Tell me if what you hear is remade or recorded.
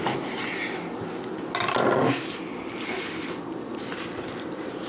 recorded